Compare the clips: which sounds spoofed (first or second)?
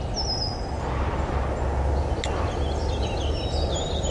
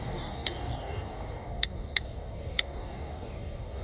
second